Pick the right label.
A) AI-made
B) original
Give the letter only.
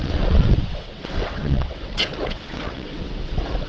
A